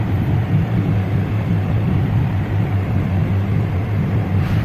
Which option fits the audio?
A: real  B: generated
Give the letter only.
B